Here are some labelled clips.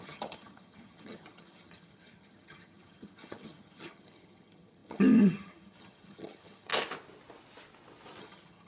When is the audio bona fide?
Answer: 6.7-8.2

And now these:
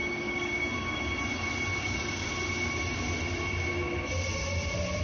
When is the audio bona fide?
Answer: 1.1-1.7; 2.3-5.0

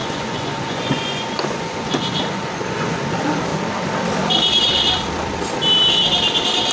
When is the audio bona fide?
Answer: 3.1-6.7

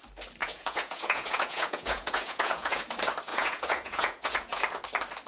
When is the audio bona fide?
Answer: 0.0-0.4; 2.8-3.3; 4.6-5.3

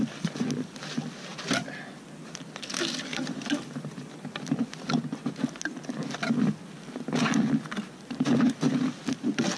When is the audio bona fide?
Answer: 0.0-9.6

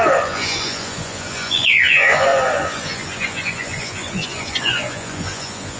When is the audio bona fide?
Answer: none

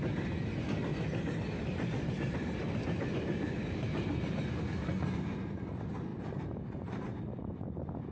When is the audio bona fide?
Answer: 0.0-0.9; 4.5-6.1; 7.2-8.1